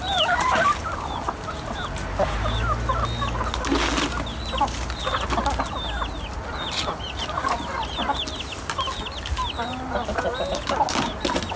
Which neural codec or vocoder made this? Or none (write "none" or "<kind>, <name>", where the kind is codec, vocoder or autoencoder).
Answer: none